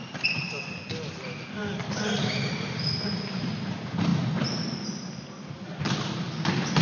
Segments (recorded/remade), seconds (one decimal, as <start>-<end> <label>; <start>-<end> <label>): 0.0-6.8 recorded